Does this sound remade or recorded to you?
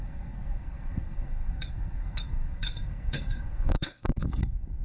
remade